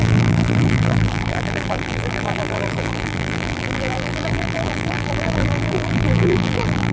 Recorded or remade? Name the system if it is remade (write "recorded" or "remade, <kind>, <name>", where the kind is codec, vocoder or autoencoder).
remade, vocoder, BigVGAN v2